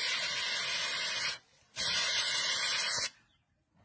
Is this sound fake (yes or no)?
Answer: no